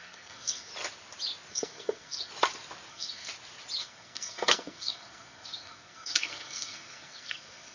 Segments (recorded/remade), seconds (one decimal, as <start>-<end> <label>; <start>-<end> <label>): 0.0-0.7 remade; 0.7-1.5 recorded; 1.5-2.3 remade; 2.3-2.9 recorded; 2.9-3.3 remade; 3.3-3.8 recorded; 3.8-7.7 remade